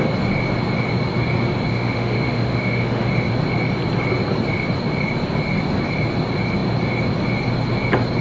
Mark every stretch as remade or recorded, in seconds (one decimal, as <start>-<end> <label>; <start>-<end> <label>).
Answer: 0.0-1.7 recorded; 1.7-3.1 remade; 3.1-8.2 recorded